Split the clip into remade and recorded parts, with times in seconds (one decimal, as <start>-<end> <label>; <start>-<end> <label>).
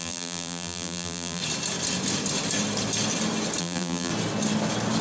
0.0-1.4 remade; 1.4-3.6 recorded; 3.6-4.1 remade; 4.1-5.0 recorded